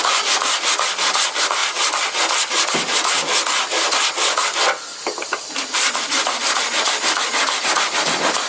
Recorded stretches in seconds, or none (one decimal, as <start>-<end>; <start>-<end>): 0.0-5.2; 6.4-8.5